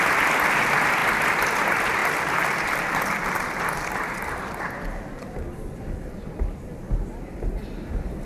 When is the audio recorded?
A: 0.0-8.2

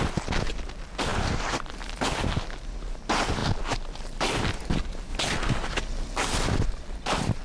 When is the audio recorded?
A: 0.0-1.1; 1.7-7.4

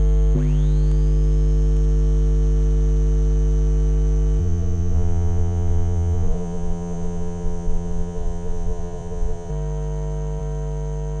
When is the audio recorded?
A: 0.0-4.4; 9.5-11.2

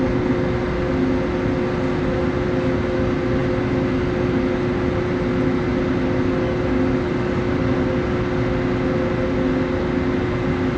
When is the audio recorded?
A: 0.0-10.8